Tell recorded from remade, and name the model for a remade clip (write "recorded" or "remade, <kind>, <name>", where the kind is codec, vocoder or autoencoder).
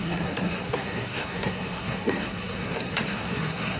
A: remade, codec, SNAC